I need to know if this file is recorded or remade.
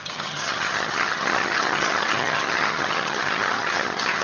remade